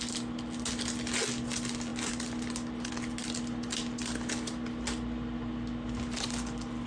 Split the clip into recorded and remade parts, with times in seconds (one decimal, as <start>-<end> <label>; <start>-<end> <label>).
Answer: 0.0-6.9 recorded